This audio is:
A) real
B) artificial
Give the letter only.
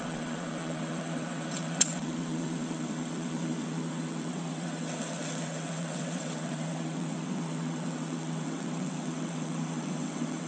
B